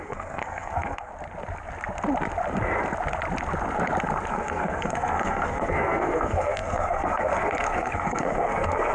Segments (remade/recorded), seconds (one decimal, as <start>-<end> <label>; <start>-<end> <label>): 0.0-1.1 remade; 1.1-4.3 recorded; 4.3-8.9 remade